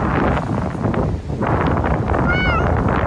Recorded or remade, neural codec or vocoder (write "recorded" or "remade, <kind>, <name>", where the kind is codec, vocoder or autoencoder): recorded